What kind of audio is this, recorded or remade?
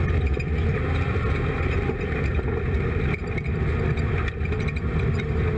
recorded